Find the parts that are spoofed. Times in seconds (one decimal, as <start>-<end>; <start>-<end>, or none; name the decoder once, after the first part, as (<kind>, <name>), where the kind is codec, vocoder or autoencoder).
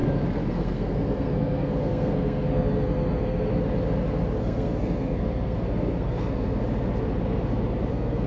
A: 0.5-3.5 (codec, SNAC); 4.4-6.6; 7.9-8.3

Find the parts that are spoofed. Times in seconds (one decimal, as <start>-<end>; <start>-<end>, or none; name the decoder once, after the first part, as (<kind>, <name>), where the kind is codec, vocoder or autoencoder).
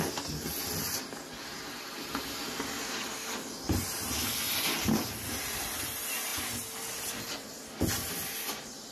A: 2.0-2.8 (vocoder, BigVGAN v2)